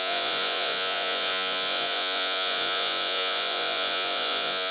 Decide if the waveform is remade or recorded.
remade